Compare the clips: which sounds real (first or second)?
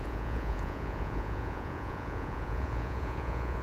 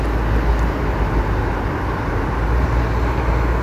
second